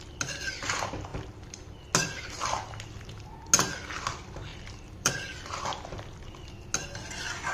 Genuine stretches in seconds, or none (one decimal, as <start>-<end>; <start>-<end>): 0.0-4.5; 5.1-7.5

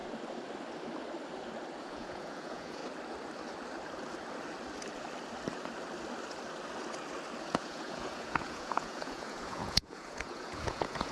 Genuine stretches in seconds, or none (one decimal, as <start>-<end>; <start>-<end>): 0.0-1.8; 2.8-7.4

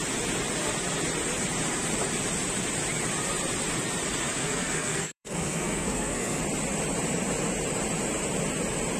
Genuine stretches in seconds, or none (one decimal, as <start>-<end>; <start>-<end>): 0.0-4.4; 6.4-9.0

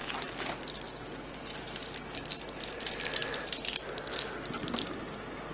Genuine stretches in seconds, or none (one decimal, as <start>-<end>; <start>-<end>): 0.0-5.5

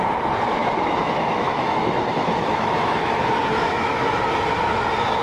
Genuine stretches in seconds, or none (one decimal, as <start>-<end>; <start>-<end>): 0.0-0.6; 3.2-3.6; 4.2-5.2

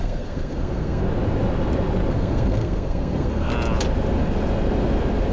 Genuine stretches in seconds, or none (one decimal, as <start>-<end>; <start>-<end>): 1.0-2.1; 3.5-5.3

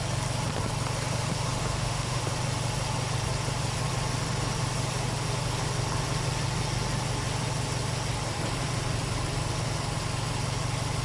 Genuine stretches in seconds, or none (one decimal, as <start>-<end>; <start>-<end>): 0.0-1.6; 2.2-11.0